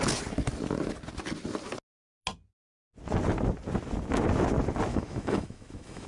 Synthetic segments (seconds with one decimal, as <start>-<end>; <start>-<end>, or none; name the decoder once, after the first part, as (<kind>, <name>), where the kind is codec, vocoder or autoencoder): 4.9-6.1 (autoencoder, DAC-VAE)